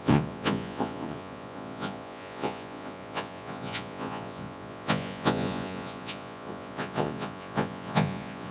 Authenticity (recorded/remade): remade